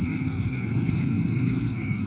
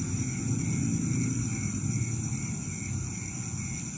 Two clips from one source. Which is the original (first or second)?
second